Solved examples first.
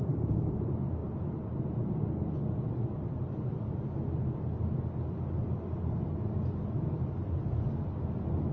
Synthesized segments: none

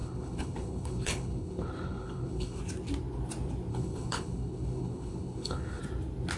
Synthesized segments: 0.0-2.6 (codec, HILCodec); 3.7-5.8

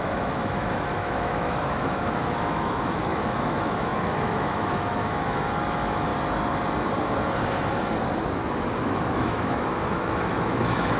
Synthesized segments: 0.0-6.1 (autoencoder, DAC-VAE); 8.8-11.0

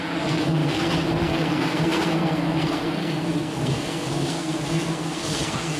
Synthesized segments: 0.0-5.8 (codec, SNAC)